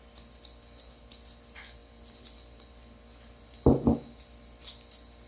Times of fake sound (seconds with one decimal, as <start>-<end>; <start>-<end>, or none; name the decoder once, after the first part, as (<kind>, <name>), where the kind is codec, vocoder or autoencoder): none